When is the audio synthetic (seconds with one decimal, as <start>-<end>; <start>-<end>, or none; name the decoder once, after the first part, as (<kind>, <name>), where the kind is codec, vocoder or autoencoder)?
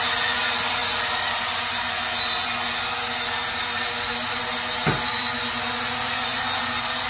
none